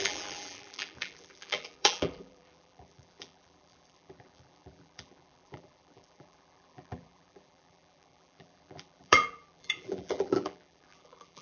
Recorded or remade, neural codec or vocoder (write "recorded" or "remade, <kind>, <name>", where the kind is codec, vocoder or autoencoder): remade, vocoder, BigVGAN v2